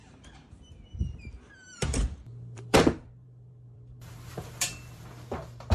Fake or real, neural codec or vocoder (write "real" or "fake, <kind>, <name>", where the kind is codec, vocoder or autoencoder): fake, vocoder, BigVGAN v2